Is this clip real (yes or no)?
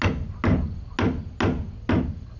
yes